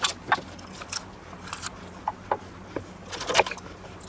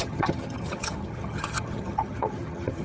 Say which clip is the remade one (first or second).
second